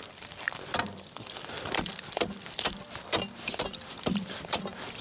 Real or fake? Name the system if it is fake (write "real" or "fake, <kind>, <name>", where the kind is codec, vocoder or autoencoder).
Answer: fake, vocoder, BigVGAN v2